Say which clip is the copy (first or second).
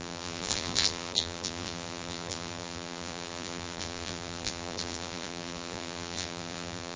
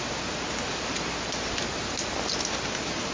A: first